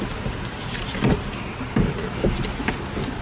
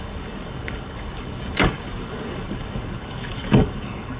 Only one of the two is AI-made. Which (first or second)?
second